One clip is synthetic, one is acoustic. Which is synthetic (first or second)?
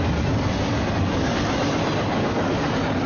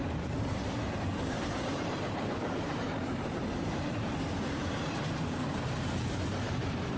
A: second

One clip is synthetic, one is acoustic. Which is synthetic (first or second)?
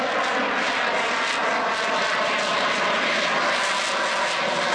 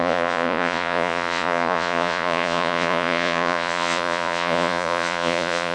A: second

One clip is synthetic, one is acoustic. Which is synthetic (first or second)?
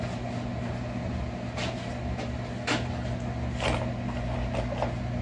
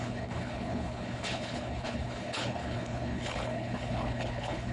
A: second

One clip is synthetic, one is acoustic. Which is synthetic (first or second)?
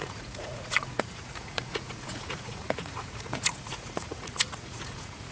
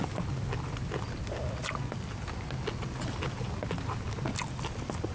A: first